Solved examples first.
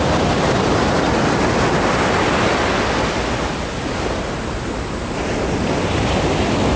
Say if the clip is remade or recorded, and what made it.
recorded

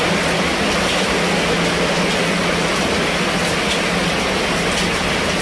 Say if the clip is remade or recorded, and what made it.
recorded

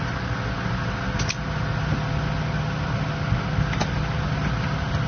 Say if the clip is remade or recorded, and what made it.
recorded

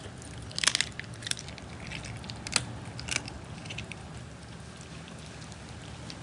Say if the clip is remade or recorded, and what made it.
recorded